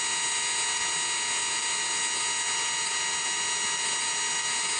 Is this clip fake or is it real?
real